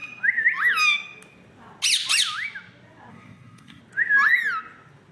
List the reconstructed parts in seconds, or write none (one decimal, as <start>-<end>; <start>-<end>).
3.1-3.8